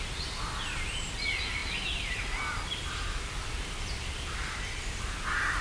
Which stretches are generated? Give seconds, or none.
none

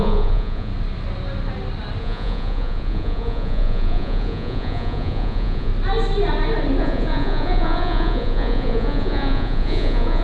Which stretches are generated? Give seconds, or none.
0.0-0.7 (vocoder, Vocos); 2.0-5.7; 6.8-10.2